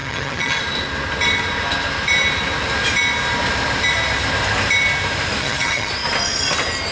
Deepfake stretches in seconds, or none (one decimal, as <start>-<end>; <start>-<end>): 0.0-0.6; 5.4-5.9